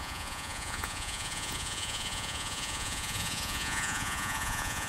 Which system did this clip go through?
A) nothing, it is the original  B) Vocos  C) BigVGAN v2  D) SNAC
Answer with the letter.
B